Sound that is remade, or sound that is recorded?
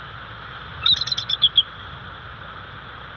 recorded